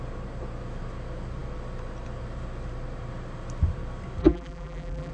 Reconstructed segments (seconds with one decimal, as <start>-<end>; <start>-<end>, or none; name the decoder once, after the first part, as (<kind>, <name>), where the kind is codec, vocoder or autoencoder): 4.2-5.1 (vocoder, BigVGAN v2)